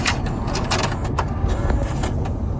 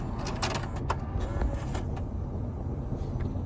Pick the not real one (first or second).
first